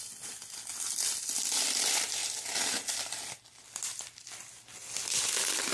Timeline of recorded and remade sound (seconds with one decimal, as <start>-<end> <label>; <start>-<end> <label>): 0.0-5.7 recorded